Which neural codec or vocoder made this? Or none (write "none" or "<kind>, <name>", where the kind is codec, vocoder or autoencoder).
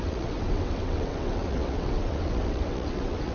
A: vocoder, WaveNeXt